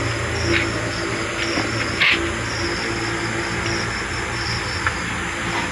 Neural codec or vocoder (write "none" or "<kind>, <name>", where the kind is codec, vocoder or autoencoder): none